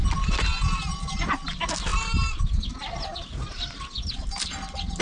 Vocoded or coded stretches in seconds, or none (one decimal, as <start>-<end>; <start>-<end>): none

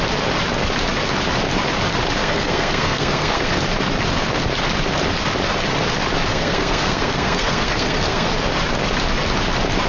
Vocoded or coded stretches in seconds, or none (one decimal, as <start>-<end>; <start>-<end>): 2.2-3.6; 6.3-8.3